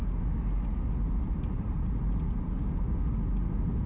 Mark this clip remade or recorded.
recorded